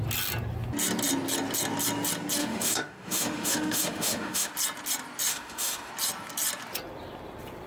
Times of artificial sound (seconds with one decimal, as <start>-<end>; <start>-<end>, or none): 2.4-4.5; 5.3-5.9